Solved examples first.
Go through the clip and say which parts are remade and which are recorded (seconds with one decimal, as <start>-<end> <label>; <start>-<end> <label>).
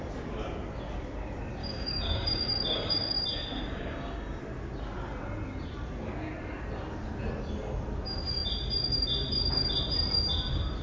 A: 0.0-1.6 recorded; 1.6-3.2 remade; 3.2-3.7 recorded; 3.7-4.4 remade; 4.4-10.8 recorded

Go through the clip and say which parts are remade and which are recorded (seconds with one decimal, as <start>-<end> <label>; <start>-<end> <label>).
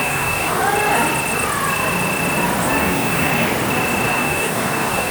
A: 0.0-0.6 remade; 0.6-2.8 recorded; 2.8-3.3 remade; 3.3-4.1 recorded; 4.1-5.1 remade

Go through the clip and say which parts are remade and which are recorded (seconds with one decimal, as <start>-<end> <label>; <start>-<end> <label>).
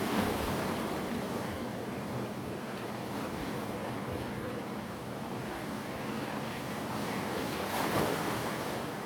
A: 0.0-0.6 remade; 0.6-1.2 recorded; 1.2-9.1 remade